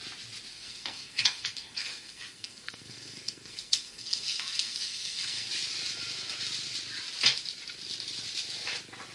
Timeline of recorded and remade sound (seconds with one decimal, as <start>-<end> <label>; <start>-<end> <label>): 0.0-0.5 recorded; 0.5-5.5 remade; 5.5-9.1 recorded